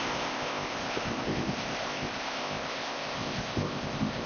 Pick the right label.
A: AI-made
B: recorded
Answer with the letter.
A